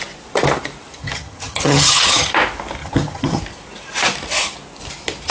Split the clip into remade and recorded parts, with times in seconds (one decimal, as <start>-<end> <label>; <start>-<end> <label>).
0.0-1.0 recorded; 1.0-2.3 remade; 2.3-2.8 recorded; 2.8-3.4 remade; 3.4-5.3 recorded